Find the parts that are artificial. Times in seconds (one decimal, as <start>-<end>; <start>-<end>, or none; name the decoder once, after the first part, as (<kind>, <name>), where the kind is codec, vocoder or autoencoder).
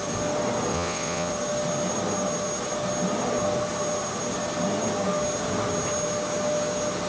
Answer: 0.7-1.3 (vocoder, WaveNeXt)